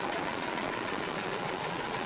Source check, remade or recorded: remade